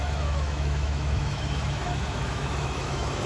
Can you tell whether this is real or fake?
fake